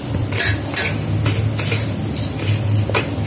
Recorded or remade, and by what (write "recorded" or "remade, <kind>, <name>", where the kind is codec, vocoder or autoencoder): recorded